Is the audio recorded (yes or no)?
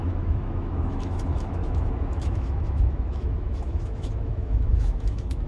no